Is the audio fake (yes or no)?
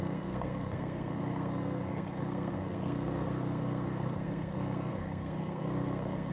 yes